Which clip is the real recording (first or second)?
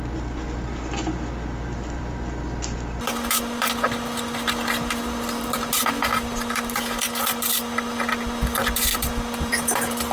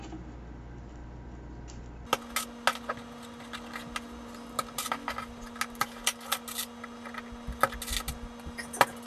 second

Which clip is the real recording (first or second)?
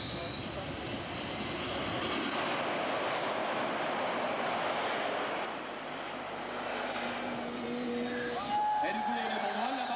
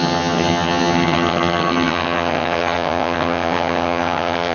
first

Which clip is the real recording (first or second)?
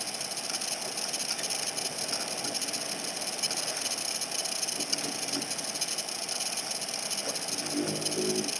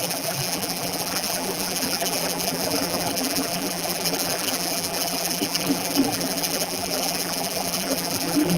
first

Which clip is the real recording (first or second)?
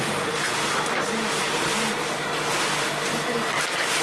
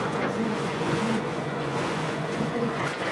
first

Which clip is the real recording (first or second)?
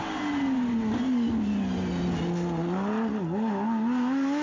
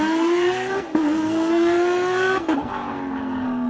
first